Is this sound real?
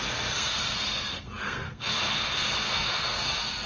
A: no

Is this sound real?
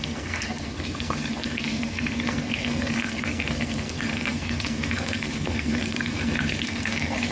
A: no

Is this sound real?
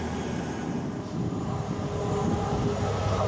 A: yes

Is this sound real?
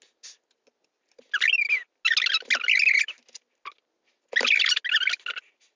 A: yes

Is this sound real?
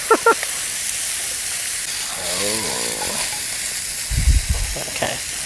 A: yes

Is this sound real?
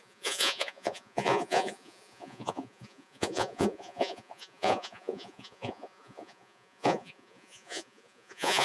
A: no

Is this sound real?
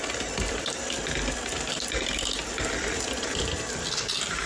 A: no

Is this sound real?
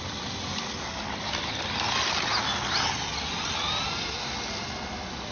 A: yes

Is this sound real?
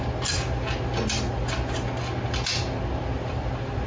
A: yes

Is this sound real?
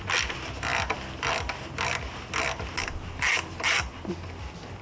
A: yes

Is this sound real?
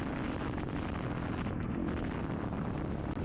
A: yes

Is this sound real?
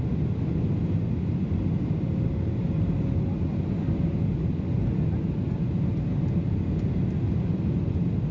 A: yes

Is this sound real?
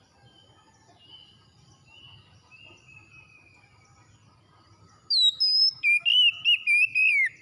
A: yes